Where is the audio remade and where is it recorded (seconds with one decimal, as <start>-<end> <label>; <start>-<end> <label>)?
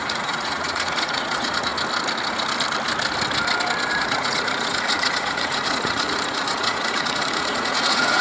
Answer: 0.0-1.7 remade; 1.7-3.9 recorded; 3.9-8.2 remade